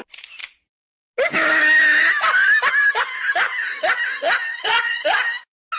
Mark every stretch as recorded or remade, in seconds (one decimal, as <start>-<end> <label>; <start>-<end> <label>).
0.0-4.5 recorded; 4.5-5.1 remade; 5.1-5.8 recorded